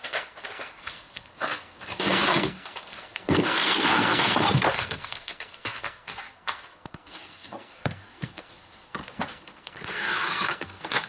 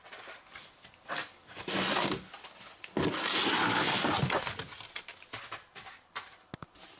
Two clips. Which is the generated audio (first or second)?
first